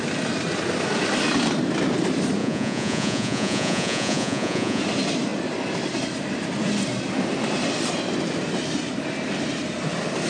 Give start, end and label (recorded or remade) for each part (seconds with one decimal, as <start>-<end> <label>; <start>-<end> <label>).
0.0-2.4 recorded; 2.4-4.8 remade; 4.8-10.3 recorded